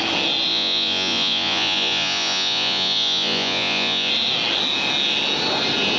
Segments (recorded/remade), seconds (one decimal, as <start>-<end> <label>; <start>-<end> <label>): 0.0-0.5 recorded; 0.5-4.1 remade; 4.1-6.0 recorded